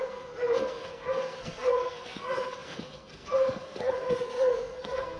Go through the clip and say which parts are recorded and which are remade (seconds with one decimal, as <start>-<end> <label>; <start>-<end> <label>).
0.0-5.2 remade